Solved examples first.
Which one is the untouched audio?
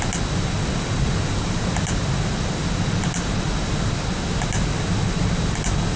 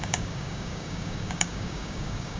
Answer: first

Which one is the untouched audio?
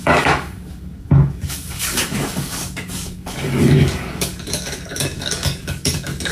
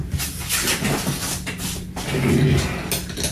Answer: second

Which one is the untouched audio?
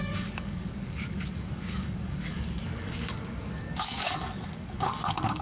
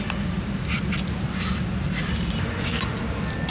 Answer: second